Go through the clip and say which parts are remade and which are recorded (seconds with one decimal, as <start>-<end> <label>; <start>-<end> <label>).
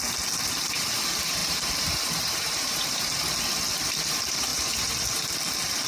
0.0-1.4 recorded; 1.4-3.2 remade; 3.2-5.9 recorded